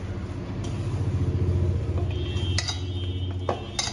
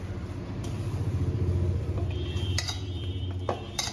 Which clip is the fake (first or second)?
second